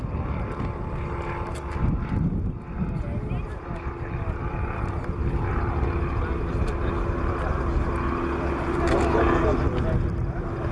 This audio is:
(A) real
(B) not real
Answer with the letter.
A